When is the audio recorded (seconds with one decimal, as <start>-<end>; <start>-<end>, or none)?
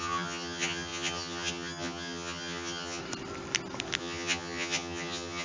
3.0-4.0